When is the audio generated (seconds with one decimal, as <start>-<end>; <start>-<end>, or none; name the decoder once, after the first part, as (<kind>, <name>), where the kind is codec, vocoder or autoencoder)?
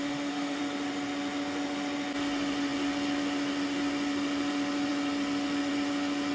0.0-0.6 (autoencoder, DAC-VAE)